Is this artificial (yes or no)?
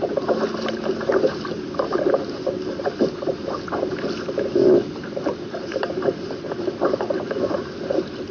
no